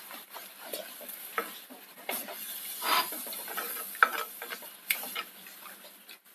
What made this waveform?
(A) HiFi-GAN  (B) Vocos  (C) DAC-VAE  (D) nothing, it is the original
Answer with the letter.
D